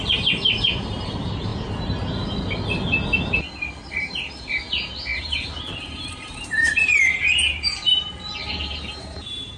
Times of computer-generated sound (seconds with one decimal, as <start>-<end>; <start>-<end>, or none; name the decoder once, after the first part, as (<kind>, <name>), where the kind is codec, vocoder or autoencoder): 0.0-1.5 (vocoder, BigVGAN v2); 3.9-9.6